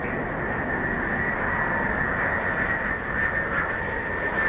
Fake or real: real